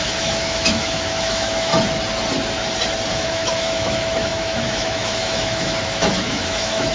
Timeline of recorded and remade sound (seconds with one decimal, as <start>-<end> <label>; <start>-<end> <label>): 0.0-1.7 remade; 1.7-3.1 recorded; 3.1-6.9 remade